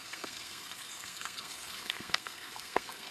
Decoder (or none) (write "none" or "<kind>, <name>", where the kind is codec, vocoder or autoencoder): codec, SNAC